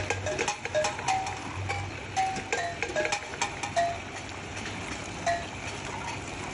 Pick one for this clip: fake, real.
real